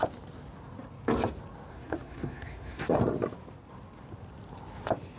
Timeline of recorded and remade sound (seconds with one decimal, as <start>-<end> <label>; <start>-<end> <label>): 0.0-1.7 recorded; 1.7-3.0 remade; 3.0-5.2 recorded